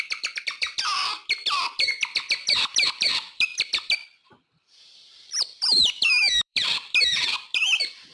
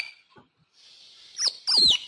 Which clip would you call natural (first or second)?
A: second